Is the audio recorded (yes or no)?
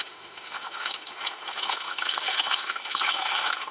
no